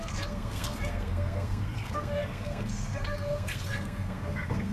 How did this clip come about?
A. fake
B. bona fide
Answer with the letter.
A